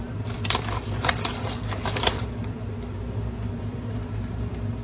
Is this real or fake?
fake